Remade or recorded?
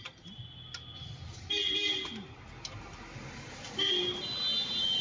recorded